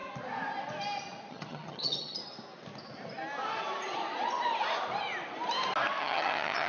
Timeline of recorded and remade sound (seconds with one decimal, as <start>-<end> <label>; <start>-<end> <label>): 0.0-1.3 recorded; 1.3-2.2 remade; 2.2-6.0 recorded; 6.0-6.7 remade